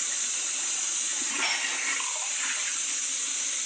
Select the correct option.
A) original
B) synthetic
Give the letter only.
A